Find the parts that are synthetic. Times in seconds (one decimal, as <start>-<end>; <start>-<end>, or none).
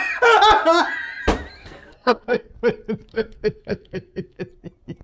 1.6-2.5; 3.1-4.4